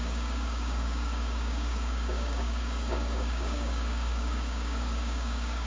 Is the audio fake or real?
fake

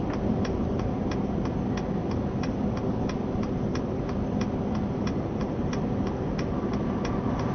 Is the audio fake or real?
real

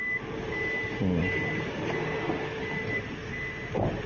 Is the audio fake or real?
real